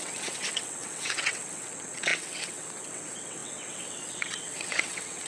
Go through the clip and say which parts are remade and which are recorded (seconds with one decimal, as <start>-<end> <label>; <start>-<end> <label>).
0.0-5.3 remade